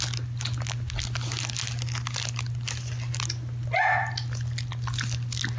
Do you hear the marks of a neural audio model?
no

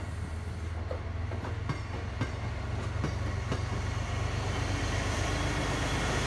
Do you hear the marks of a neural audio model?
no